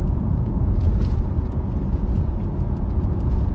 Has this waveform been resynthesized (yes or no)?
yes